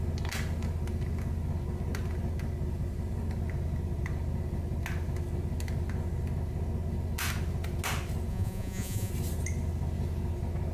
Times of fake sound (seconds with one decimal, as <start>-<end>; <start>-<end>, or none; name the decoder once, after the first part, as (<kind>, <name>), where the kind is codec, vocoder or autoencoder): 8.3-9.1 (vocoder, Vocos)

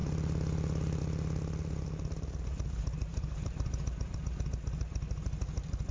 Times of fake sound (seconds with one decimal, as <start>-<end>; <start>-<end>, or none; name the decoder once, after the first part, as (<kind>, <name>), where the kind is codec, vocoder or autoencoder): 0.0-1.0 (vocoder, BigVGAN v2); 3.1-4.2